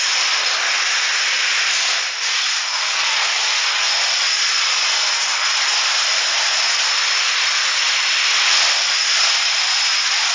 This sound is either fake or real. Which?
real